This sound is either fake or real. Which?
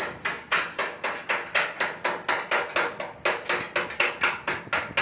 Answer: real